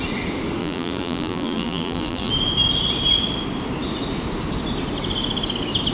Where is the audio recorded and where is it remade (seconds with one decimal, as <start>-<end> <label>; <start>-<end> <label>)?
0.0-0.6 recorded; 0.6-2.3 remade; 2.3-5.9 recorded